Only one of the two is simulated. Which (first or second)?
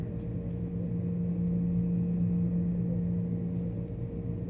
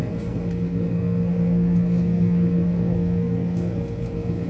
second